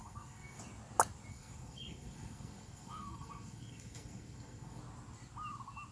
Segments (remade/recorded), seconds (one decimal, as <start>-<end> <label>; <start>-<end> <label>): 0.0-0.6 remade; 0.6-1.3 recorded; 1.3-4.8 remade; 4.8-5.9 recorded